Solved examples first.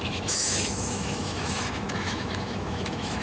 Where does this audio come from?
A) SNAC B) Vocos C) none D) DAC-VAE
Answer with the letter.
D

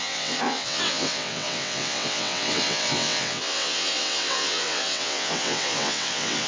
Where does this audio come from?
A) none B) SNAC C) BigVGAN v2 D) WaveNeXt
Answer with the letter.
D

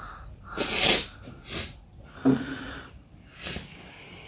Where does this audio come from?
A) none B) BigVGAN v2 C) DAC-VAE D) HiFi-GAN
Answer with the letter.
A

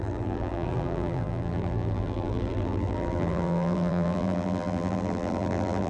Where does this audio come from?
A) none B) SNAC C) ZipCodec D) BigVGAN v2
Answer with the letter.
D